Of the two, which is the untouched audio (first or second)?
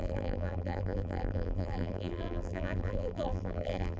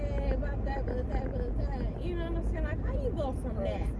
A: second